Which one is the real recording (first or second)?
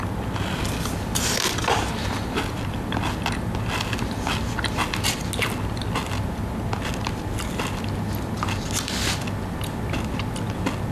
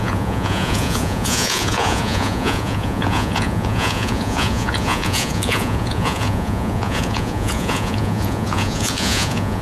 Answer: first